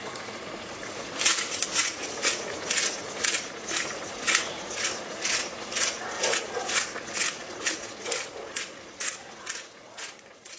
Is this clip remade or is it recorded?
remade